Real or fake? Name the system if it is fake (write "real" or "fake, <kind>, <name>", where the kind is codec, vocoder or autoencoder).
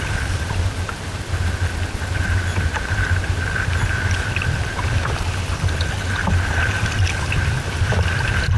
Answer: real